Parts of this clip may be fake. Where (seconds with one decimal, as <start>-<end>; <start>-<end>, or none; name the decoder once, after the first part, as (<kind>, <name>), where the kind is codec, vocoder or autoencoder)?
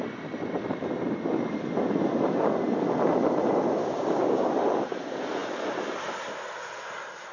3.8-4.5 (codec, DAC)